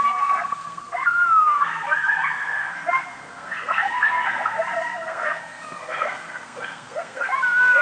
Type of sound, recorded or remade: remade